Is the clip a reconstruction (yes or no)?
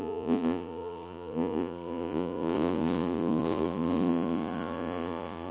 yes